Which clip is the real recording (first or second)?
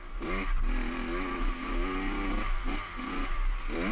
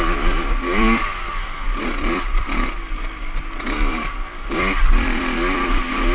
first